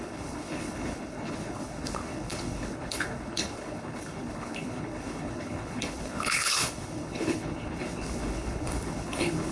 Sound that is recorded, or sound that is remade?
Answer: remade